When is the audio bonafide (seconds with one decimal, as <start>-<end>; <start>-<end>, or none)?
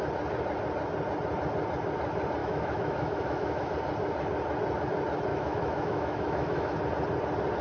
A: 0.0-2.4; 3.7-5.3; 6.8-7.6